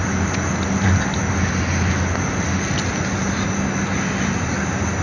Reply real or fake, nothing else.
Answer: real